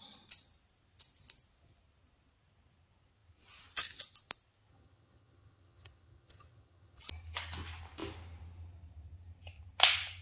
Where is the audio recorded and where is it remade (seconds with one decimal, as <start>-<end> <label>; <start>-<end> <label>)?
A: 0.0-4.7 recorded; 4.7-7.0 remade; 7.0-10.2 recorded